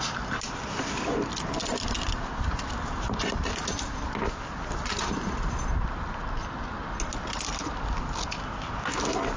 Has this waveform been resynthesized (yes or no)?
no